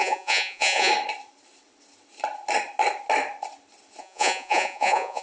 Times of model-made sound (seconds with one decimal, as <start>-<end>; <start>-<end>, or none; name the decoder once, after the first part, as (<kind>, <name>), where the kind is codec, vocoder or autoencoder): 0.0-0.9 (vocoder, Vocos); 4.0-5.2

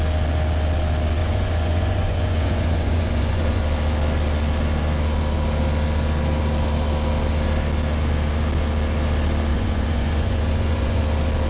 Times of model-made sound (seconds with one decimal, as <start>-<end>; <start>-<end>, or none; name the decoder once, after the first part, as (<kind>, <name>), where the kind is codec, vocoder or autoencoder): 1.2-3.6 (vocoder, Vocos); 9.5-11.0

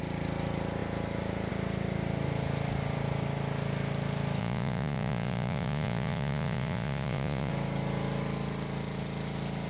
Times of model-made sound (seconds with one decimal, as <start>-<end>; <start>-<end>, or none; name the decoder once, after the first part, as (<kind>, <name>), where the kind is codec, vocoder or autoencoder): 4.4-7.5 (vocoder, Vocos)

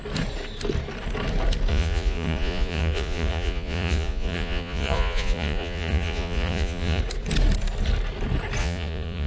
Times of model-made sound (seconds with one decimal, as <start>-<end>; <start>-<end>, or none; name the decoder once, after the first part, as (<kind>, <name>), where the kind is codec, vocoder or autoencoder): 1.7-7.0 (vocoder, Vocos); 8.6-9.3

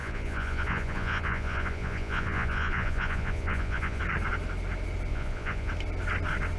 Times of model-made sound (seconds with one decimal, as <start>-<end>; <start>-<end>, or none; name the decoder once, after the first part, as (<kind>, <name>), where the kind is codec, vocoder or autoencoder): 0.0-4.0 (vocoder, Vocos); 5.1-5.7